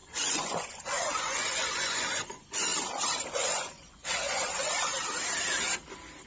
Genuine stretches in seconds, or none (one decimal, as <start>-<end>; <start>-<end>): 2.7-3.3; 4.9-6.3